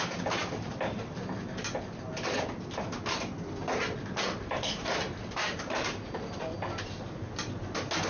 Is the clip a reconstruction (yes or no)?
no